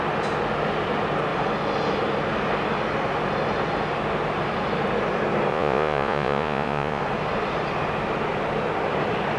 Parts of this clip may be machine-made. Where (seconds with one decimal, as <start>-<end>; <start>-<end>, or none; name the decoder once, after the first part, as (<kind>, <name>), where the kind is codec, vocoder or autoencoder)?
5.5-7.0 (vocoder, Vocos)